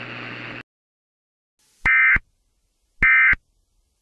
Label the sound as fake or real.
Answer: real